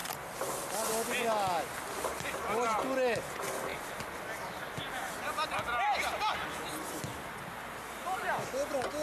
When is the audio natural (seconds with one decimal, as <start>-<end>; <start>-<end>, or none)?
0.0-9.0